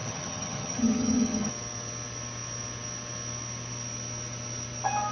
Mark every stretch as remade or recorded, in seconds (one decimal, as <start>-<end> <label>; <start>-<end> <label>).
0.0-1.5 remade; 1.5-5.1 recorded